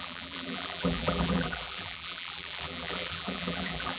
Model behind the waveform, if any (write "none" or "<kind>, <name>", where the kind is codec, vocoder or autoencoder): vocoder, BigVGAN v2